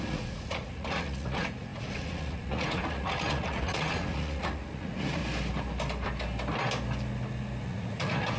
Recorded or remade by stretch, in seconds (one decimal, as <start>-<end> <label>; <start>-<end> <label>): 0.0-5.2 remade; 5.2-7.6 recorded; 7.6-8.4 remade